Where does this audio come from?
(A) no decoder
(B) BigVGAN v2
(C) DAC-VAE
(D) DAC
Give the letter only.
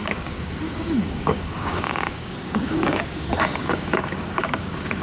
D